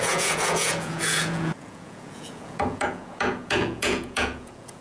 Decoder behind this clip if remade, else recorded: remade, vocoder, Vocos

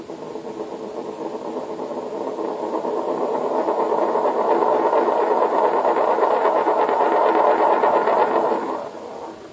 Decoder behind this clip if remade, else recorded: recorded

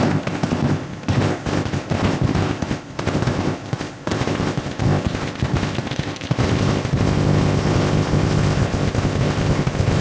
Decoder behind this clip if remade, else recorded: remade, codec, ZipCodec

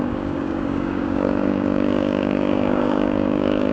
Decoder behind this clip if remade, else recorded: remade, codec, DAC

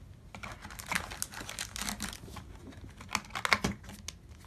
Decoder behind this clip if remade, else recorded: recorded